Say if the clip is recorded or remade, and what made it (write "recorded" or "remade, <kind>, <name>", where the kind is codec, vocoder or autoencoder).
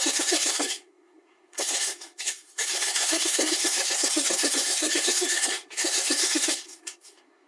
remade, codec, SNAC